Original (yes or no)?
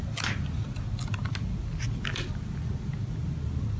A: yes